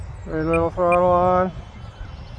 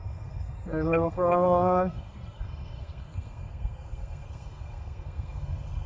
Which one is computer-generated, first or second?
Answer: second